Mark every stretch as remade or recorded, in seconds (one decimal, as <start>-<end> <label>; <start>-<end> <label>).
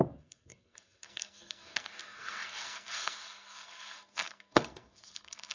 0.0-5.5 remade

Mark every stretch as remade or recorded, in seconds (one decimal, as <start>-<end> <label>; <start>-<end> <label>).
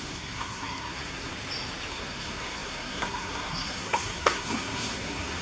0.0-1.3 remade; 1.3-1.9 recorded; 1.9-5.4 remade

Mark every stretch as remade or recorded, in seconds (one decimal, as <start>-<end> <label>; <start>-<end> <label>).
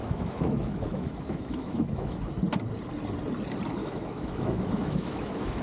0.0-2.2 remade; 2.2-3.8 recorded; 3.8-5.6 remade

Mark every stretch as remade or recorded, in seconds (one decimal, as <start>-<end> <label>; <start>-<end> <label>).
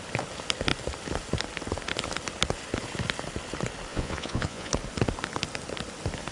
0.0-3.9 recorded; 3.9-4.7 remade; 4.7-6.3 recorded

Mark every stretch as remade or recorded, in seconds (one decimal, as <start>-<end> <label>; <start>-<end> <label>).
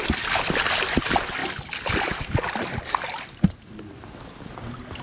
0.0-5.0 recorded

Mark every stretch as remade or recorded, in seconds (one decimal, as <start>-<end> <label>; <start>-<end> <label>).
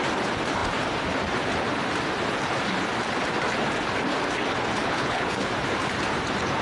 0.0-4.8 recorded; 4.8-5.5 remade; 5.5-6.6 recorded